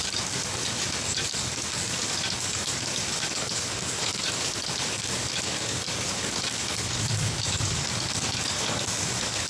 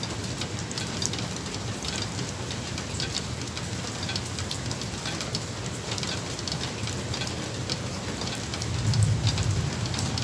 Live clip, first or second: second